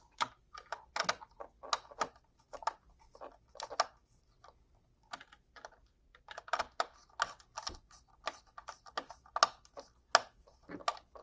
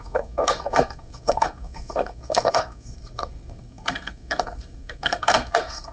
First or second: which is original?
first